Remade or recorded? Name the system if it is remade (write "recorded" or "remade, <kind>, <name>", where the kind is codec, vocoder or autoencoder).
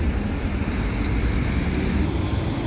recorded